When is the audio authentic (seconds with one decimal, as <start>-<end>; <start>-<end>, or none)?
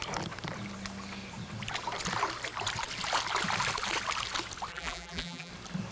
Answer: 0.0-4.7; 5.5-5.9